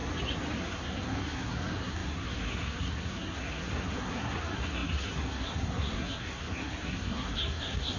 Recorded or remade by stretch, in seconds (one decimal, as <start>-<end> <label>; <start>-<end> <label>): 0.0-0.6 recorded; 0.6-8.0 remade